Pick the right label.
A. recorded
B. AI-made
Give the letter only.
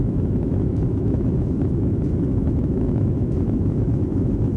B